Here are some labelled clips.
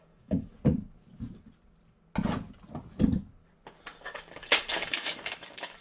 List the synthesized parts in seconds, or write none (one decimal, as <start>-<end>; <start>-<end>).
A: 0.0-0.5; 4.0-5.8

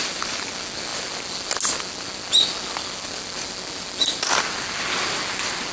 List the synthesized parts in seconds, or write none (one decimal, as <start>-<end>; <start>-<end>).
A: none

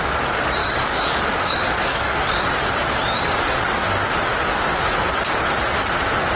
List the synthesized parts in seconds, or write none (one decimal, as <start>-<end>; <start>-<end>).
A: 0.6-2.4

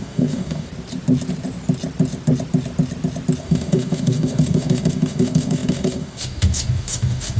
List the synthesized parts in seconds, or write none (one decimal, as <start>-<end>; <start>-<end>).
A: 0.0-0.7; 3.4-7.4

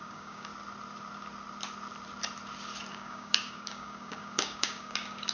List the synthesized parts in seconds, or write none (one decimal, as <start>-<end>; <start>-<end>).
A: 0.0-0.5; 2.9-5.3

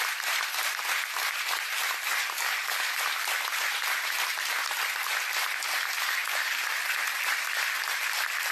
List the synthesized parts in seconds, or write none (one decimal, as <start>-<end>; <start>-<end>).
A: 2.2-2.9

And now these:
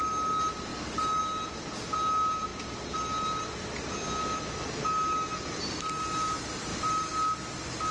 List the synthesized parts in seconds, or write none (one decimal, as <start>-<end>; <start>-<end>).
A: 0.7-1.2